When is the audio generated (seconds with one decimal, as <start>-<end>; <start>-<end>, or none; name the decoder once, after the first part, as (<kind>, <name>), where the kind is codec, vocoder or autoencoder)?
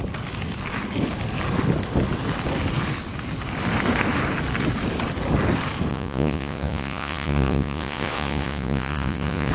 5.9-9.5 (vocoder, Vocos)